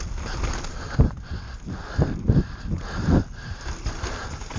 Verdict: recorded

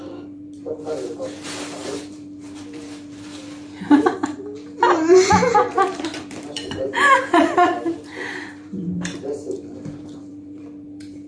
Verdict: remade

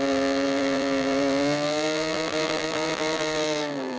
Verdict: remade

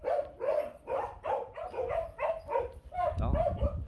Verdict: recorded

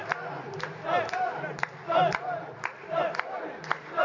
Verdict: remade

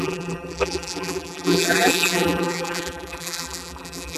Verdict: remade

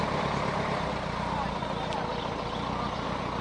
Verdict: remade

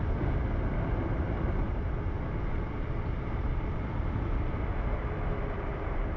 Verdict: recorded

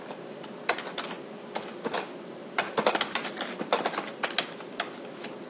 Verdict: recorded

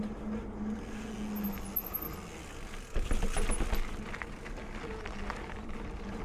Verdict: recorded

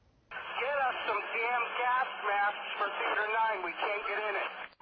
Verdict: recorded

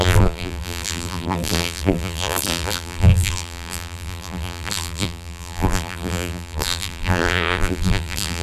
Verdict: remade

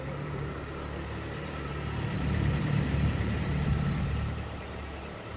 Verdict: remade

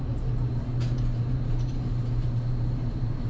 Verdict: remade